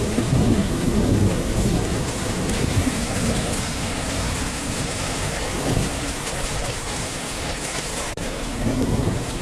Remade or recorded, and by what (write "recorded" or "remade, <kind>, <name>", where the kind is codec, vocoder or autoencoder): remade, codec, SNAC